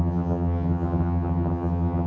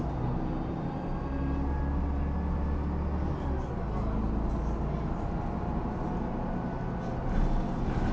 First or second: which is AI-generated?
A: first